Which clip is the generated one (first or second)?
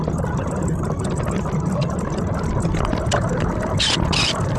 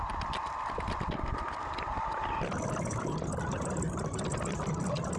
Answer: second